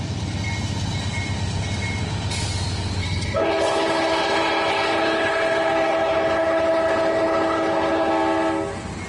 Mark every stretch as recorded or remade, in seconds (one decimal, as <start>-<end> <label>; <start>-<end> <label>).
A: 0.0-3.0 recorded; 3.0-8.1 remade; 8.1-9.1 recorded